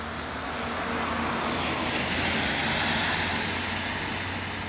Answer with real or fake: real